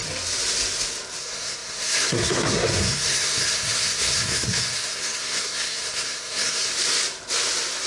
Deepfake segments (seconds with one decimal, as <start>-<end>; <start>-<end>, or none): 1.2-6.7